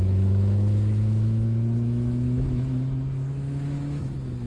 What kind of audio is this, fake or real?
fake